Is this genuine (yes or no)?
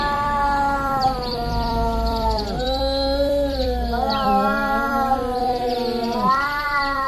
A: no